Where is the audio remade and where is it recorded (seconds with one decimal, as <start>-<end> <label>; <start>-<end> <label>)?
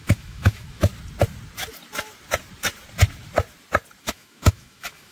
0.0-0.9 remade; 0.9-4.0 recorded; 4.0-5.1 remade